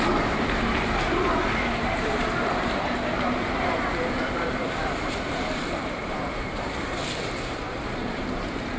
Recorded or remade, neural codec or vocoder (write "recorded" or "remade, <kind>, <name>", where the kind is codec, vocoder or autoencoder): remade, vocoder, BigVGAN v2